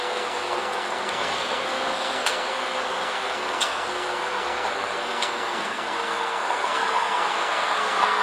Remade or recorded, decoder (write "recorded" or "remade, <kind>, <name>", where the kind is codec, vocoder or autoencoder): remade, codec, SNAC